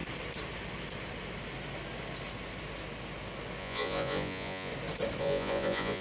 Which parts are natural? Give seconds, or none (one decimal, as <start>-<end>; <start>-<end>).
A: 0.0-3.6; 4.7-5.2